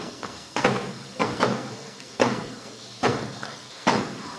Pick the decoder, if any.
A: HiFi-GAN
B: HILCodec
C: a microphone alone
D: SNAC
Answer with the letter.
D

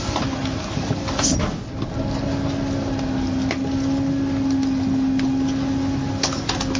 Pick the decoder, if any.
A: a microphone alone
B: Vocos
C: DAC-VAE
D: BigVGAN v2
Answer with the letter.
A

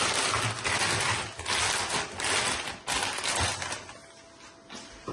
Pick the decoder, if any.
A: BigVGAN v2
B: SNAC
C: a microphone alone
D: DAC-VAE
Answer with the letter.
C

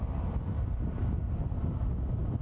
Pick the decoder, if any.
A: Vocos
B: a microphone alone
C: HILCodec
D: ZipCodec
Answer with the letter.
B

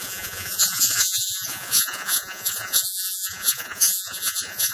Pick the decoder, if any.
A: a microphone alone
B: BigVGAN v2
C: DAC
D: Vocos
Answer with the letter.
D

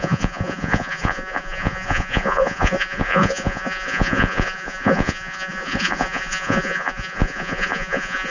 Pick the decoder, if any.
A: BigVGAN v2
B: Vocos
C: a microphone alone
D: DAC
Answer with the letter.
B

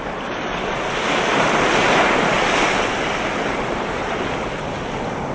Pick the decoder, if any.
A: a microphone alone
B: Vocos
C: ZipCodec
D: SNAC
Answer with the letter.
A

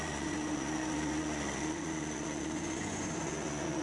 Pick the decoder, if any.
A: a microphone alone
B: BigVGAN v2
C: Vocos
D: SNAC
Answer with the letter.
C